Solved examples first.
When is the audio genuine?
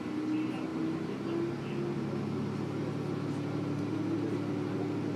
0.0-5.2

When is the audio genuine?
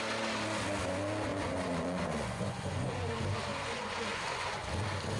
0.0-1.3; 3.1-3.5; 4.7-5.2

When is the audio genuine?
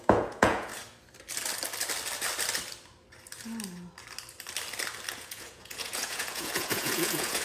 0.7-5.1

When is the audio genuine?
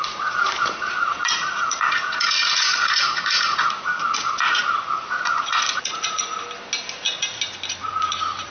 6.3-7.8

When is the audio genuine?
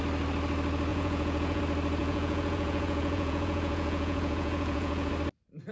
0.0-0.9; 1.6-2.0; 5.1-5.7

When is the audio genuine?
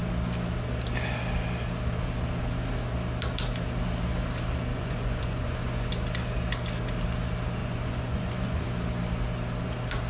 0.0-4.7; 5.9-7.6; 8.7-10.1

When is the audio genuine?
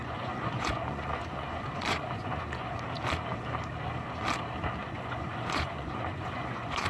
2.7-4.8